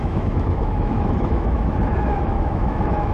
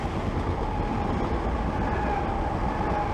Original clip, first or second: second